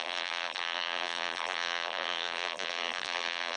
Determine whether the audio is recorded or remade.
remade